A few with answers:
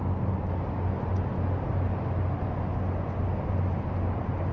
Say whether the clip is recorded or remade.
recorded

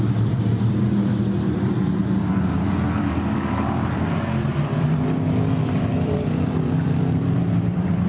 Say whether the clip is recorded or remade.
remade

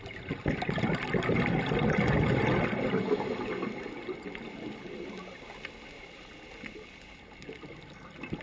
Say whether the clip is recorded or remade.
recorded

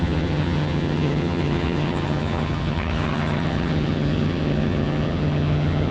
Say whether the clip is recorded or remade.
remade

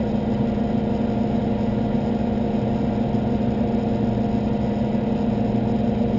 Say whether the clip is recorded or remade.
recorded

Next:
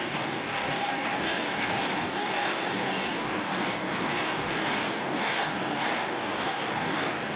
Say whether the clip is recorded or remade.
remade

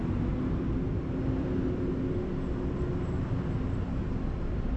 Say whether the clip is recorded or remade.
recorded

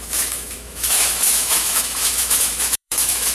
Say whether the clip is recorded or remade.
remade